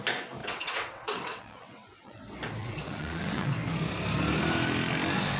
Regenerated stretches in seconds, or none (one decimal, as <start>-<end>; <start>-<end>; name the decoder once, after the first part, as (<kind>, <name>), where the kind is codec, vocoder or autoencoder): 0.4-2.2 (vocoder, WaveNeXt); 2.6-3.5